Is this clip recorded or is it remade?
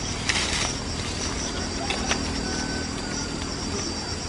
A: recorded